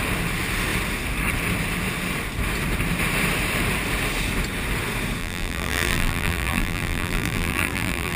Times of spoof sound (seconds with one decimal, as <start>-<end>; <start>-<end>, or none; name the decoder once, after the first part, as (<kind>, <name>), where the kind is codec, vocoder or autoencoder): 5.2-8.2 (vocoder, BigVGAN v2)